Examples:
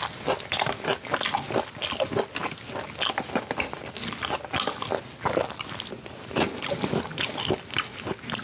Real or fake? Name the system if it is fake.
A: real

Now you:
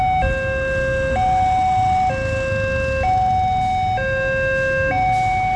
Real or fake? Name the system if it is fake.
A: real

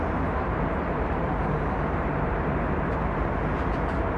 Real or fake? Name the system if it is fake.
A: fake, vocoder, BigVGAN v2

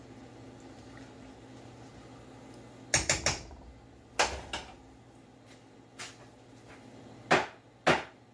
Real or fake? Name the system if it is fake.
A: real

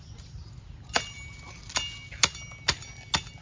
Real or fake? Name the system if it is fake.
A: real